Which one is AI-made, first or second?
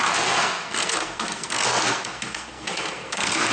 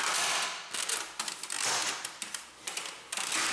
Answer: first